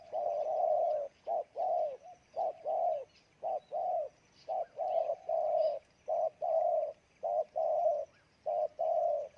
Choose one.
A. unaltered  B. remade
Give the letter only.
B